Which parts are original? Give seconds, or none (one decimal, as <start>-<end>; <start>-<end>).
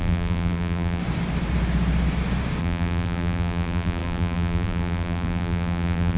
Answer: 1.0-2.6